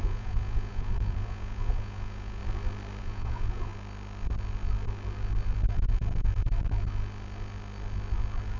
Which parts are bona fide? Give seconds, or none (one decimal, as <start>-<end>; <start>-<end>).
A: 2.4-3.0; 3.7-8.6